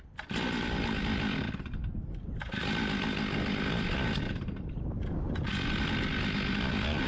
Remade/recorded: recorded